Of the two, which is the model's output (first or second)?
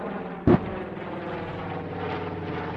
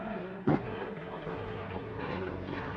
second